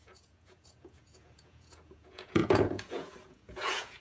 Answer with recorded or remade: remade